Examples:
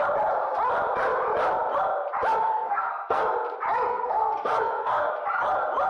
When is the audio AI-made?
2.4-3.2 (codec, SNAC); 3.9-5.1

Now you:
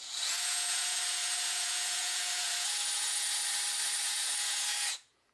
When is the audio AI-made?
0.0-3.4 (vocoder, Vocos); 4.0-5.3

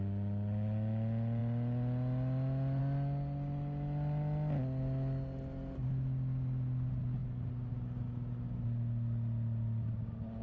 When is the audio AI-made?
none

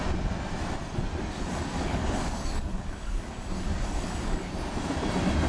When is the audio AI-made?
1.5-4.5 (codec, DAC)

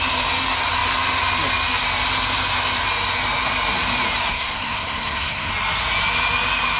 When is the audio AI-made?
4.3-5.5 (codec, SNAC)